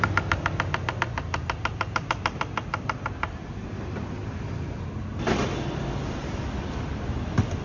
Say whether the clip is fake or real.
real